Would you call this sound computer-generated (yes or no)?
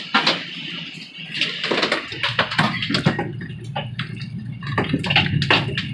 no